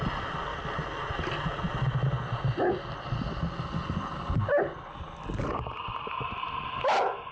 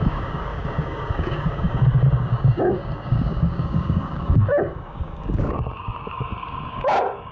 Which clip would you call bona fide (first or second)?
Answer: first